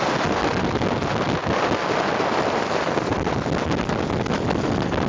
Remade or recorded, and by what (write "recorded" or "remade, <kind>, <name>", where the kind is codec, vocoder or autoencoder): recorded